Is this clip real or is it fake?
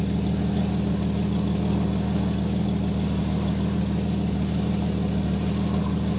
real